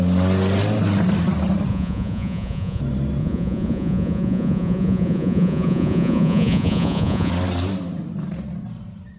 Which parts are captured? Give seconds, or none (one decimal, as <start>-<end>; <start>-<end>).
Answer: 0.0-1.7; 2.8-3.2; 7.3-9.2